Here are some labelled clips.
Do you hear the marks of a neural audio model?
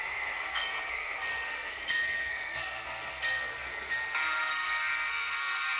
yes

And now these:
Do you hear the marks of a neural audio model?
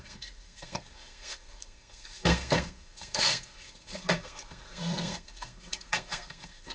yes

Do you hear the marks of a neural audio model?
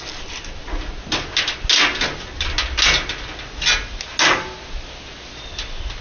no